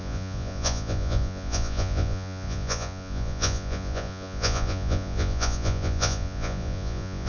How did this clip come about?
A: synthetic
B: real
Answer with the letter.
A